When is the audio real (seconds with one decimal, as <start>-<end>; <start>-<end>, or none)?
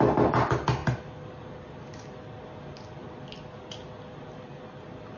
0.0-5.2